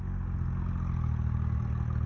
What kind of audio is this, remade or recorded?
recorded